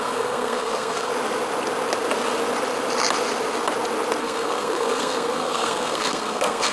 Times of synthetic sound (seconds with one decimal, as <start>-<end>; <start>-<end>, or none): 0.0-1.1; 4.2-6.7